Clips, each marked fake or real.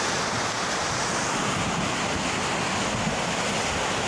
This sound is real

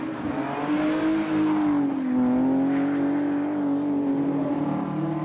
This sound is real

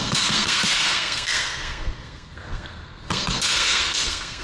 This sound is fake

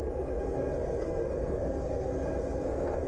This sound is fake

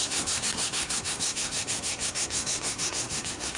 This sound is fake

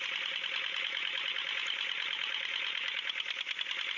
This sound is real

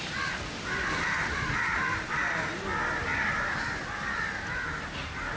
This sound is real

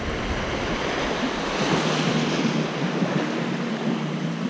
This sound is real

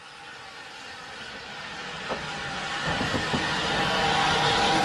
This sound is real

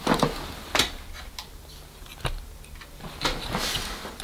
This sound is real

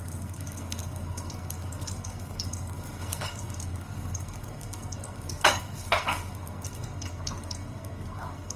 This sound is fake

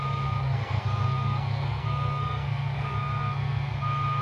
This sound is fake